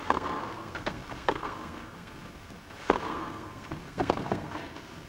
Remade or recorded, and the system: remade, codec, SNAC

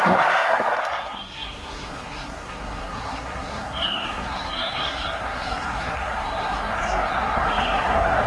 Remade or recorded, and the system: remade, codec, SNAC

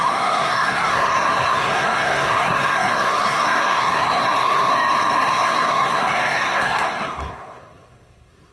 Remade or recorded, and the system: remade, codec, SNAC